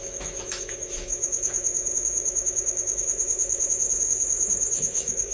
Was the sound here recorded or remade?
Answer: remade